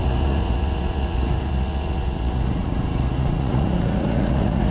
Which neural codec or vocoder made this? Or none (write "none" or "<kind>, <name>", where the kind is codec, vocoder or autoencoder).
vocoder, Vocos